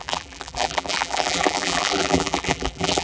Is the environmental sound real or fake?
fake